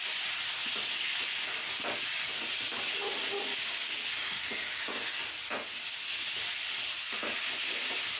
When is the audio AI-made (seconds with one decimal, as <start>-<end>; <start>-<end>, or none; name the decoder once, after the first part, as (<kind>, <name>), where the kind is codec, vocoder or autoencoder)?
3.5-5.2 (codec, DAC)